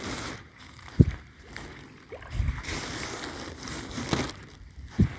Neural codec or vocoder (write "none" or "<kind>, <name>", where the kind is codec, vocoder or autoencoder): none